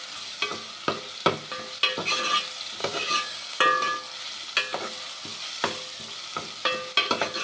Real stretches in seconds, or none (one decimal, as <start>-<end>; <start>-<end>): 0.0-2.8; 3.6-7.4